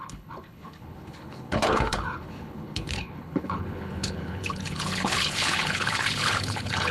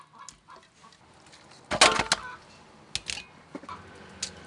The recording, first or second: second